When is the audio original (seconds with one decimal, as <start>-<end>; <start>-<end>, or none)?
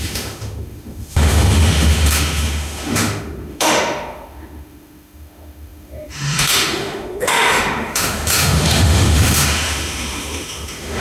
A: none